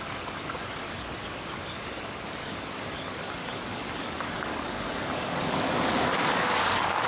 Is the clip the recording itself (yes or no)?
no